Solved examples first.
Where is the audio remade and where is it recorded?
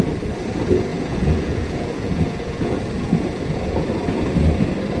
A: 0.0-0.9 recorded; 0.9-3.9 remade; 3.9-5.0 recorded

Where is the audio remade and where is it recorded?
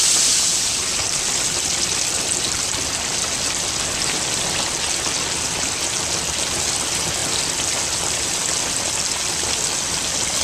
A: 0.0-10.4 recorded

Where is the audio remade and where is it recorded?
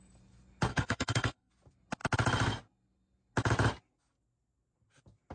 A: 0.0-0.7 recorded; 0.7-1.5 remade; 1.5-5.3 recorded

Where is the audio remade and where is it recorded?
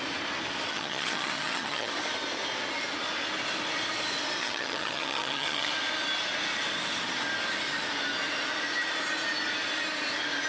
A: 0.0-0.7 recorded; 0.7-1.9 remade; 1.9-4.4 recorded; 4.4-5.7 remade; 5.7-10.5 recorded